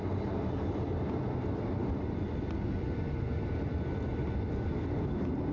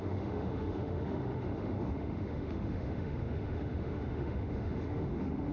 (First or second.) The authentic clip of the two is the first